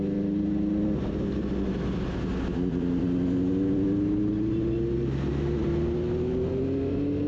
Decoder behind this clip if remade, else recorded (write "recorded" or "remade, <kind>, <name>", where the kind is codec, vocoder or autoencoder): recorded